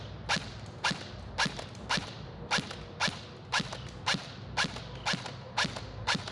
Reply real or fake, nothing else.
real